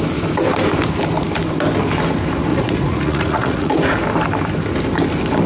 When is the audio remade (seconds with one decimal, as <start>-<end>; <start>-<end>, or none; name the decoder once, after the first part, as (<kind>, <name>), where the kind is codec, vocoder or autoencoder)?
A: 2.5-3.7 (vocoder, Vocos)